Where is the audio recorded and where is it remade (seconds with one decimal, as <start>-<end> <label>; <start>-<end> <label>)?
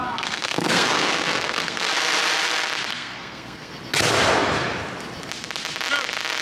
0.0-1.9 remade; 1.9-2.9 recorded; 2.9-3.7 remade; 3.7-6.4 recorded